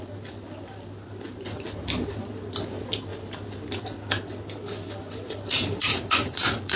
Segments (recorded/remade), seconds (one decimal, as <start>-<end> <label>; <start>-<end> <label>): 0.0-5.9 recorded; 5.9-6.8 remade